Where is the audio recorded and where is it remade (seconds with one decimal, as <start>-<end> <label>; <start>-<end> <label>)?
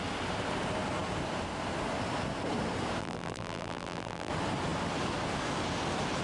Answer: 0.0-3.0 recorded; 3.0-4.3 remade; 4.3-6.2 recorded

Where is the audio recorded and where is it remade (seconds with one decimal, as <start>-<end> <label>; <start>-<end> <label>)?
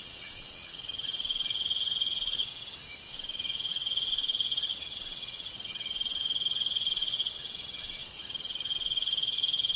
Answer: 0.0-2.5 remade; 2.5-3.1 recorded; 3.1-9.8 remade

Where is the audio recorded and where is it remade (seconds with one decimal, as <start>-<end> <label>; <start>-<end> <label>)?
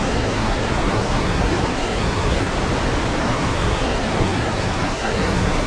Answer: 0.0-2.5 remade; 2.5-3.2 recorded; 3.2-5.7 remade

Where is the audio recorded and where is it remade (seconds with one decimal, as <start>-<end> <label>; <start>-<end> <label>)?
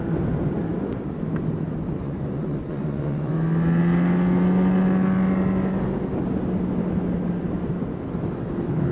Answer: 0.0-2.0 recorded; 2.0-3.3 remade; 3.3-8.9 recorded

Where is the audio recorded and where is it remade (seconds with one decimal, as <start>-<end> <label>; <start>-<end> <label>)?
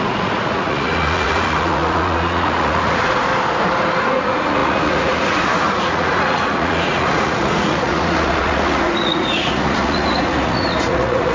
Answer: 0.0-3.3 remade; 3.3-4.0 recorded; 4.0-11.3 remade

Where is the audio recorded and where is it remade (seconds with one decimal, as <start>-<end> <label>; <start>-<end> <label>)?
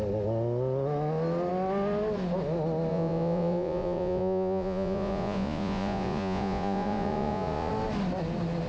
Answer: 0.0-2.9 recorded; 2.9-7.7 remade; 7.7-8.7 recorded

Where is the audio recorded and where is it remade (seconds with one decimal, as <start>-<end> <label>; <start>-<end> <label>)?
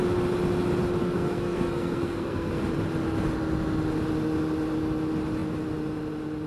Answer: 0.0-1.0 recorded; 1.0-2.6 remade; 2.6-6.5 recorded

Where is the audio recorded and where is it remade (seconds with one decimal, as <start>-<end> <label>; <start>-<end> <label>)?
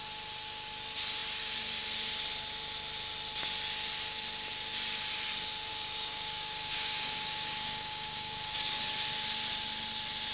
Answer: 0.0-5.7 recorded; 5.7-8.8 remade; 8.8-10.3 recorded